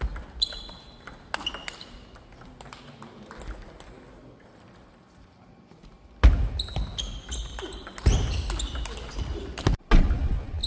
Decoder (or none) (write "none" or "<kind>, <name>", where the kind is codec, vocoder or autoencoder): none